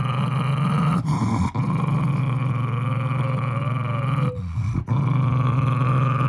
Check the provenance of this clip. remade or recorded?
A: recorded